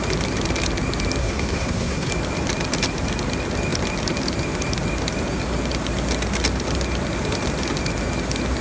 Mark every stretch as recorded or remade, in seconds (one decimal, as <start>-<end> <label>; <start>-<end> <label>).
0.0-1.2 recorded; 1.2-2.1 remade; 2.1-8.6 recorded